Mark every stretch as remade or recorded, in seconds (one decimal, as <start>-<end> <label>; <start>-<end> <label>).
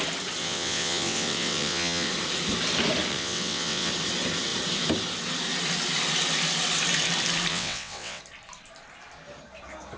0.0-0.4 recorded; 0.4-2.1 remade; 2.1-3.1 recorded; 3.1-3.9 remade; 3.9-7.5 recorded; 7.5-8.2 remade; 8.2-10.0 recorded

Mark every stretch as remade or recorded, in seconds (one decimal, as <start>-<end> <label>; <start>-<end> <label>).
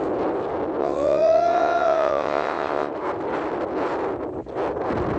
0.0-0.8 recorded; 0.8-2.9 remade; 2.9-5.2 recorded